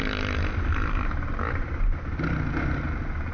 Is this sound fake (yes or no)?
no